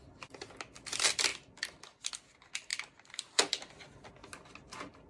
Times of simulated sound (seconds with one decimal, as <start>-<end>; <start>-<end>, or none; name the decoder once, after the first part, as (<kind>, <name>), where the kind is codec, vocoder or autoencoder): none